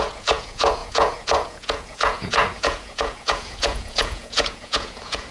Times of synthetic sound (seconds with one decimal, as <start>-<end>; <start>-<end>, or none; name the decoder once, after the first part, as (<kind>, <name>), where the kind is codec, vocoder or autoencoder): 0.0-5.3 (vocoder, Vocos)